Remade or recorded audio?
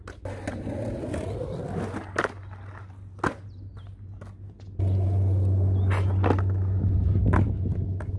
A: recorded